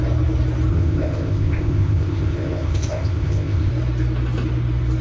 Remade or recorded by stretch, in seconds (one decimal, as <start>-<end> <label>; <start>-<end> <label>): 0.0-0.7 recorded; 0.7-3.7 remade; 3.7-5.0 recorded